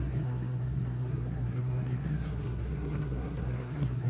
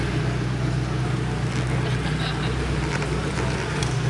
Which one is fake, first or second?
first